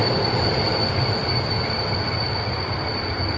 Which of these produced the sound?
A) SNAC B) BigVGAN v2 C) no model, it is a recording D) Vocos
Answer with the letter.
C